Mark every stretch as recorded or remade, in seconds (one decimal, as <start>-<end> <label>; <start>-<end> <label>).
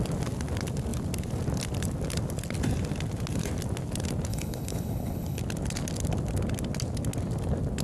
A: 0.0-4.3 recorded; 4.3-5.4 remade; 5.4-7.8 recorded